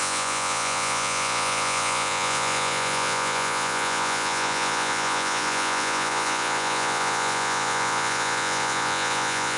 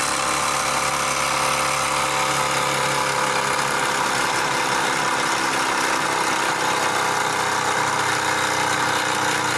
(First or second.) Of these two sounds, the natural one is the second